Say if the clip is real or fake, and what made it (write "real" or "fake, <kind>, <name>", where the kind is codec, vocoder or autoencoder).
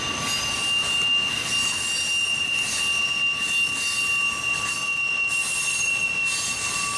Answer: real